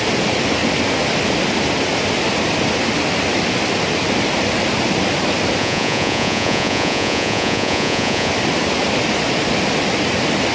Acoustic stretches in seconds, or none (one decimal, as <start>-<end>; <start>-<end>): 0.0-5.6; 8.3-10.5

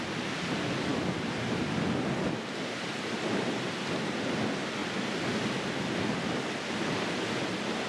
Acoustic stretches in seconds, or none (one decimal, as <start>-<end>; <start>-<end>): 0.0-7.9

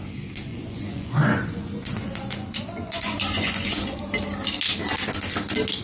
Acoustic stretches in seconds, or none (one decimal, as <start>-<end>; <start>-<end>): 0.0-0.5; 4.0-5.8

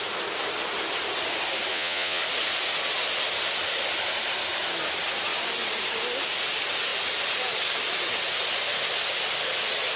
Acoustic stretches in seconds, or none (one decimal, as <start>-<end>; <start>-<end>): 0.0-1.7; 2.2-10.0

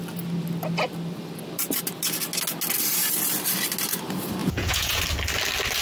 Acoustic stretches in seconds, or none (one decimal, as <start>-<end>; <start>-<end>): 0.0-4.4; 5.0-5.8

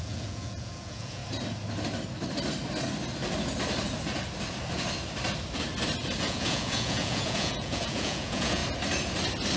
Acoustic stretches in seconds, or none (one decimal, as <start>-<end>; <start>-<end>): 1.2-6.2; 8.6-9.6

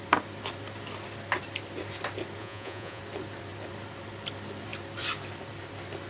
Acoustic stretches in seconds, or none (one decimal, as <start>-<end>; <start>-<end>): 0.0-2.4; 3.0-6.1